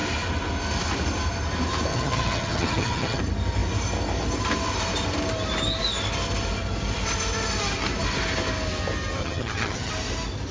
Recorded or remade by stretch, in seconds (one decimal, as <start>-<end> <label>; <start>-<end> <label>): 0.0-1.9 recorded; 1.9-3.2 remade; 3.2-9.2 recorded; 9.2-9.9 remade; 9.9-10.5 recorded